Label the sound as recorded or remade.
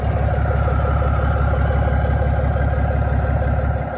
recorded